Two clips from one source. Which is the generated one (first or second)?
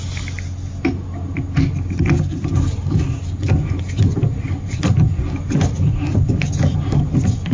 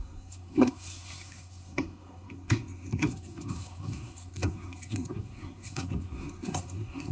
second